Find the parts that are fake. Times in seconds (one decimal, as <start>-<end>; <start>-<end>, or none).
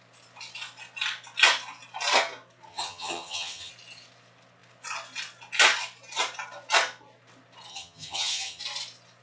2.7-3.7; 7.7-8.6